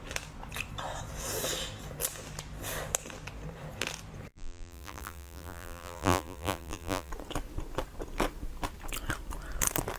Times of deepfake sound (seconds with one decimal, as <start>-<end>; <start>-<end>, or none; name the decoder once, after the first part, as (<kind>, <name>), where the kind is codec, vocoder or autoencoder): 4.3-7.1 (vocoder, BigVGAN v2)